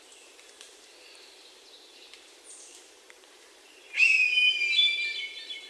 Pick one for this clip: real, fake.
fake